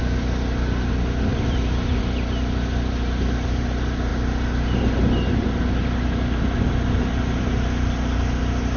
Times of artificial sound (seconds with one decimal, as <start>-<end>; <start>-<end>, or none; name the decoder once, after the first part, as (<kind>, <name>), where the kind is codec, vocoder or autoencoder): 1.3-2.0 (vocoder, BigVGAN v2)